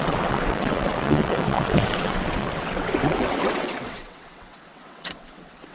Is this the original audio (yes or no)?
no